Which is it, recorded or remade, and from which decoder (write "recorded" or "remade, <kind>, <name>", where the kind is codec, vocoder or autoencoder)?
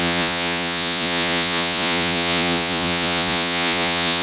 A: remade, vocoder, Vocos